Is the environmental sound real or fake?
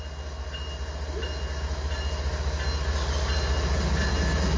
real